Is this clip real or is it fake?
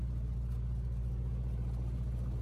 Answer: real